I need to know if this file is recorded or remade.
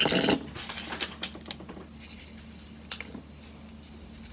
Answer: recorded